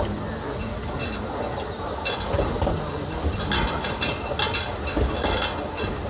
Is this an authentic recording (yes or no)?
yes